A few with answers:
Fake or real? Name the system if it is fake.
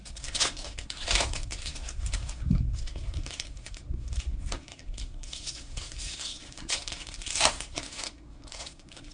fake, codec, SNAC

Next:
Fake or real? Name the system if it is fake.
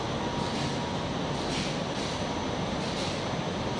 real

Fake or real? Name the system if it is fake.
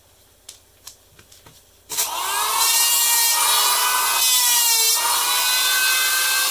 real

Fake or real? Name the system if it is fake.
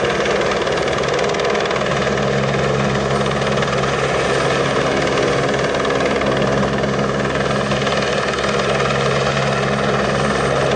real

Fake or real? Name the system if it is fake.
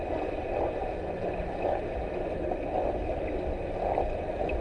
real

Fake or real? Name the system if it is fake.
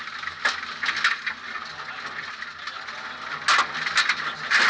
real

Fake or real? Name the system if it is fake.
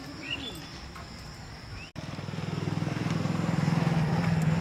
real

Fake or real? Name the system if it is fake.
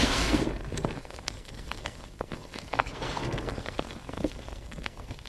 fake, codec, SNAC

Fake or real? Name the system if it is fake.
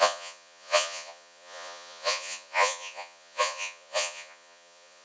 fake, vocoder, Vocos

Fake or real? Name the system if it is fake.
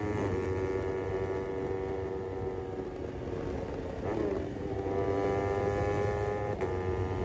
real